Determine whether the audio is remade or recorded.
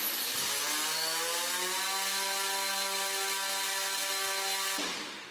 recorded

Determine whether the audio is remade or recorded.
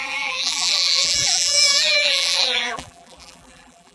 remade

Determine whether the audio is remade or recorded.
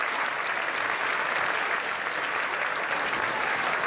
recorded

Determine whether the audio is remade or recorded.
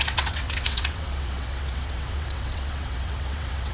remade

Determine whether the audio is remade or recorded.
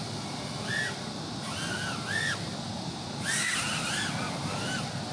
recorded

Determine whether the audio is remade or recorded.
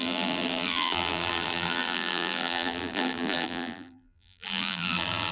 remade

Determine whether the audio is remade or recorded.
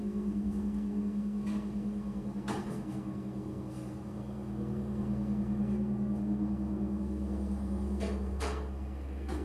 remade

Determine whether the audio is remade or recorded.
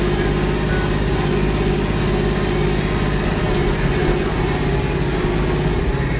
recorded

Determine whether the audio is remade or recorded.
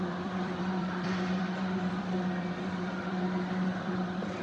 remade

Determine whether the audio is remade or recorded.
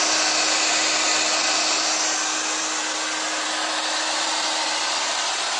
recorded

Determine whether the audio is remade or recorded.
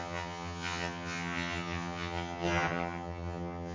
remade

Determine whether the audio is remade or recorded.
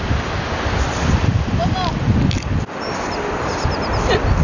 recorded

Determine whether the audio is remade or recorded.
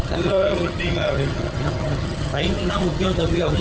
remade